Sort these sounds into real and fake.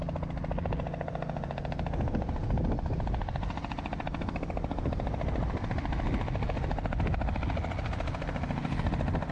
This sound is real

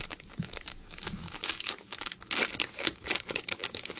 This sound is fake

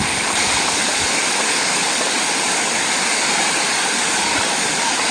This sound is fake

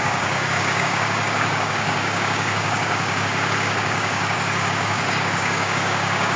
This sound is fake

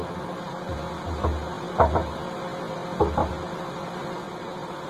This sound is real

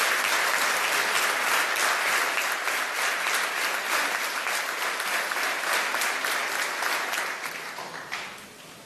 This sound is real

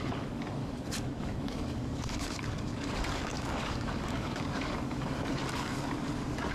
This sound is fake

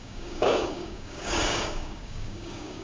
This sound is fake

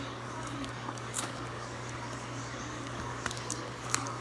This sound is fake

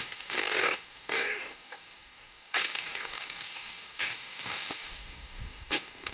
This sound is fake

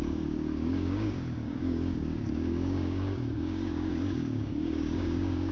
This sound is fake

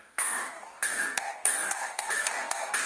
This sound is fake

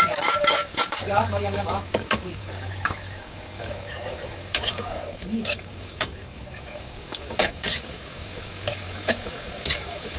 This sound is fake